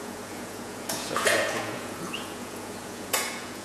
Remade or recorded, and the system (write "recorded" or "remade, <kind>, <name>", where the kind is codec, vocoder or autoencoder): remade, vocoder, Vocos